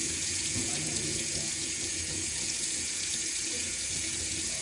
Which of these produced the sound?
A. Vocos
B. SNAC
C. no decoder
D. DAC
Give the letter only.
A